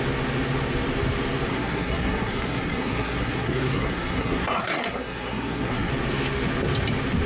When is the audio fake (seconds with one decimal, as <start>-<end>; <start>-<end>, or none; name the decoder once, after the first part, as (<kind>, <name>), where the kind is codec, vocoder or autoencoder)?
1.5-5.9 (codec, SNAC)